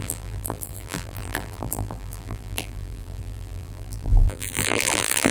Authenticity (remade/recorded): remade